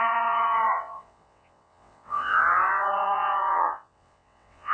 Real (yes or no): no